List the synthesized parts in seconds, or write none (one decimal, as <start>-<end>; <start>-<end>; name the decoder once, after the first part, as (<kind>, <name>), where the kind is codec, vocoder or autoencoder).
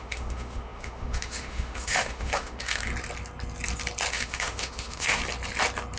0.0-2.9 (autoencoder, DAC-VAE); 4.1-5.2